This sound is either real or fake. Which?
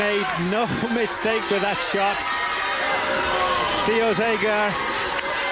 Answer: real